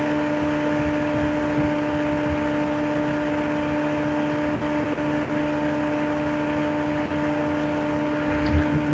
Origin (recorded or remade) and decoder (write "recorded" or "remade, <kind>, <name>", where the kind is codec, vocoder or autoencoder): recorded